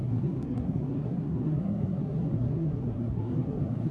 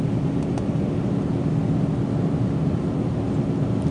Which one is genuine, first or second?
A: second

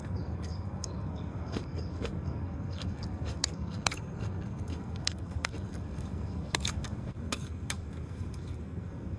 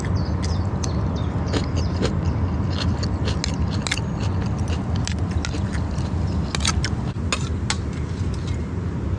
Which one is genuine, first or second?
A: second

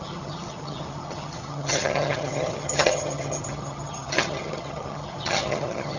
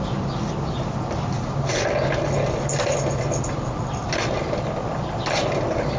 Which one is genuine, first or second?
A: second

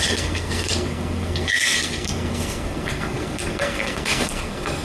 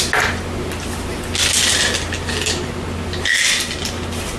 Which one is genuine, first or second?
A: second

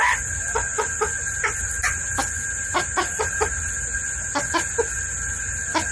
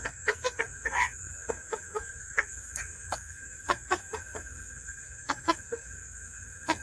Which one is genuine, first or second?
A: first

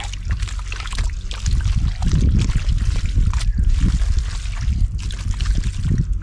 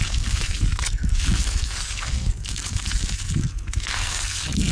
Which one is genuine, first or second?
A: first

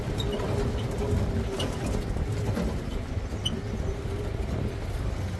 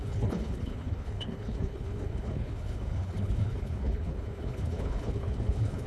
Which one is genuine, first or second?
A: first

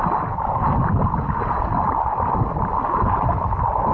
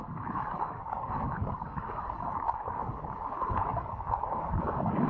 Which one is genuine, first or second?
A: first